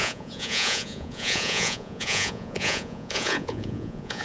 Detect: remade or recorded remade